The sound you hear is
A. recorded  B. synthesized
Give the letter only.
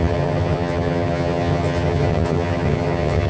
B